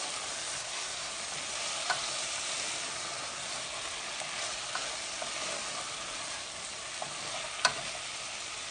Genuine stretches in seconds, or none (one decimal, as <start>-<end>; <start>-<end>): 0.0-0.6; 1.1-8.7